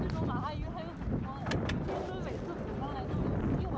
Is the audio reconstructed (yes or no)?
no